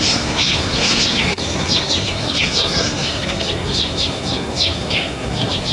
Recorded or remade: remade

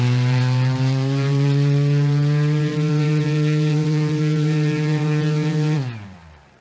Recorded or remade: remade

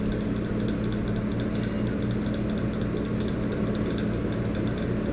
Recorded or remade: recorded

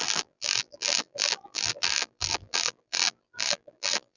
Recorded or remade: remade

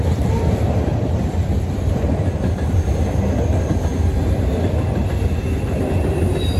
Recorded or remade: recorded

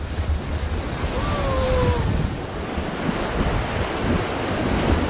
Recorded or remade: recorded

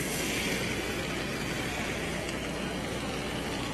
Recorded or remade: recorded